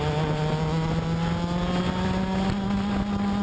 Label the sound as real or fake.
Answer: real